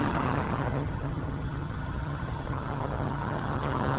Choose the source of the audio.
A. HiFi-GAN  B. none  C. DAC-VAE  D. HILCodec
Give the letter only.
A